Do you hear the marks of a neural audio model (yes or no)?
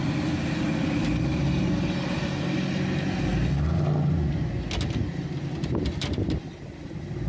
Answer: no